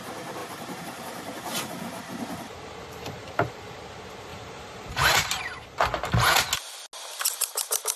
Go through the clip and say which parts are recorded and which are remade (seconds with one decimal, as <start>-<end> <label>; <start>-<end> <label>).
0.0-0.4 recorded; 0.4-2.0 remade; 2.0-4.3 recorded; 4.3-5.4 remade; 5.4-8.0 recorded